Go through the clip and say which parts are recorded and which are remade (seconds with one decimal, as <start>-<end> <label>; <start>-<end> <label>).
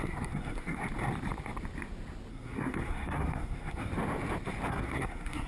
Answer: 0.0-0.8 remade; 0.8-2.3 recorded; 2.3-3.9 remade; 3.9-4.7 recorded; 4.7-5.5 remade